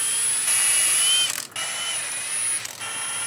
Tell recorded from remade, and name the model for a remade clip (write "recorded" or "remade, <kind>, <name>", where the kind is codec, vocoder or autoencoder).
recorded